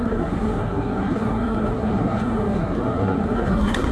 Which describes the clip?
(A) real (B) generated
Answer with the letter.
B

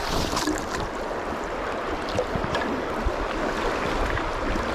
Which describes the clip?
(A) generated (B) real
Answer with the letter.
B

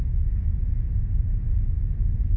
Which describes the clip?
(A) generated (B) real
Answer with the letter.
B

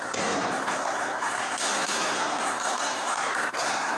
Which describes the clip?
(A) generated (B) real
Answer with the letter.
A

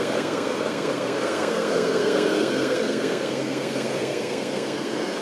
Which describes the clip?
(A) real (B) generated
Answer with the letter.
B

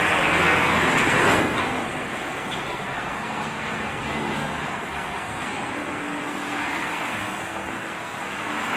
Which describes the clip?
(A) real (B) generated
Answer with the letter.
B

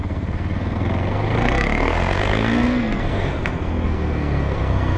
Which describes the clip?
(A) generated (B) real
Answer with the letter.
A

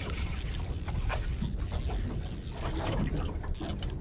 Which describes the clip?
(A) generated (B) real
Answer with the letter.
B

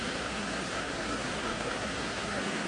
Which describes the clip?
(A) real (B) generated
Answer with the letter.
B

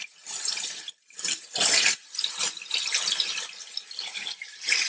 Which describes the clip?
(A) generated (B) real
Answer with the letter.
B